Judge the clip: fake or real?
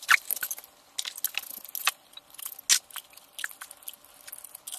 real